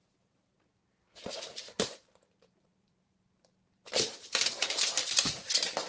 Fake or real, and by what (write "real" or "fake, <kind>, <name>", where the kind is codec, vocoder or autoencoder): fake, vocoder, BigVGAN v2